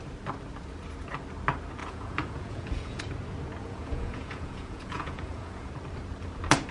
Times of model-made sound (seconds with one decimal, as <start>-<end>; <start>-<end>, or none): 1.8-3.0; 3.6-5.7